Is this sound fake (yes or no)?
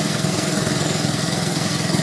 yes